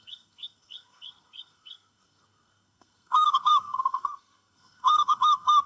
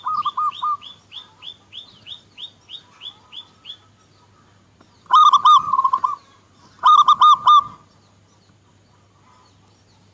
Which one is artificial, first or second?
first